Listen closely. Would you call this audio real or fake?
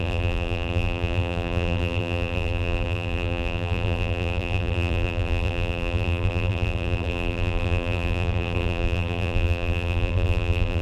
fake